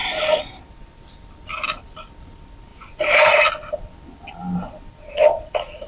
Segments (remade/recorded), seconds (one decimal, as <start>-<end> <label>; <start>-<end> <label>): 0.0-0.9 remade; 0.9-2.7 recorded; 2.7-3.5 remade; 3.5-5.9 recorded